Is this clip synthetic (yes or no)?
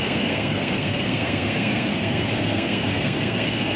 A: yes